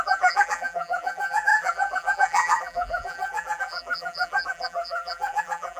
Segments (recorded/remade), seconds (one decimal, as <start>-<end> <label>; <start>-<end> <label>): 0.0-5.8 remade